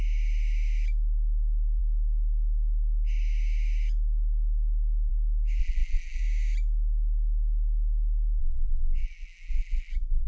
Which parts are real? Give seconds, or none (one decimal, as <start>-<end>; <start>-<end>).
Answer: 0.0-5.6; 6.2-8.4